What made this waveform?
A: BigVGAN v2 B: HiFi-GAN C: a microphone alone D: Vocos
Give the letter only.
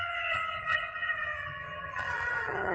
B